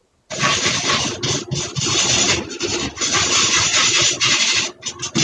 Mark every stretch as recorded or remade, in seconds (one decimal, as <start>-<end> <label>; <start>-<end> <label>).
0.0-5.2 recorded